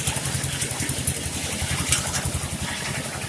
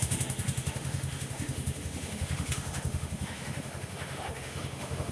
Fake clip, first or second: second